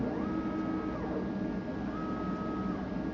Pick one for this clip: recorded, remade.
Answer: recorded